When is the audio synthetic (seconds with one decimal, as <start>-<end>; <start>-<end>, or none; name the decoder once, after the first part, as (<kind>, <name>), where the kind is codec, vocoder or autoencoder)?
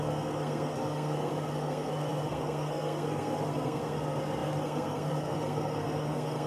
0.0-6.5 (codec, SNAC)